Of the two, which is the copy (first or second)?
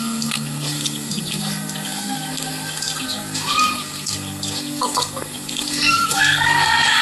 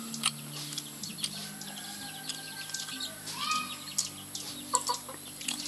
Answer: first